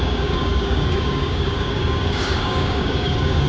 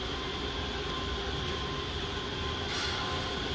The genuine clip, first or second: second